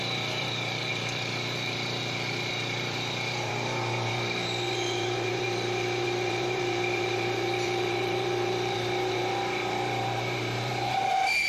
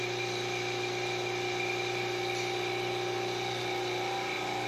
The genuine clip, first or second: second